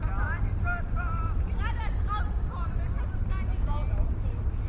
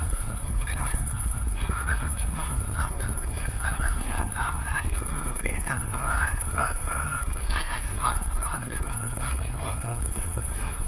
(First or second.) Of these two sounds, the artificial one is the second